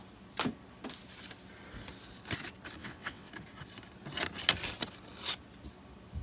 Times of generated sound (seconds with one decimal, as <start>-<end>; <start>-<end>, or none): 2.8-3.3